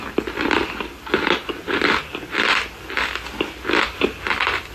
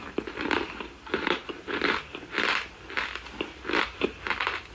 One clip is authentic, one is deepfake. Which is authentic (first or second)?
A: first